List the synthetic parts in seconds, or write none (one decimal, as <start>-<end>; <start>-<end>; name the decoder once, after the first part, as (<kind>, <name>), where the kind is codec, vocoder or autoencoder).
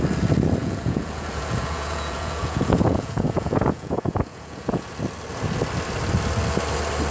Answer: 0.6-4.9 (vocoder, Vocos)